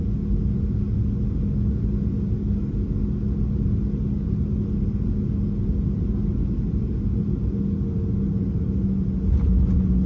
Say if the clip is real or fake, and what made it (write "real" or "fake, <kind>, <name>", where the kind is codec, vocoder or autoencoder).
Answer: real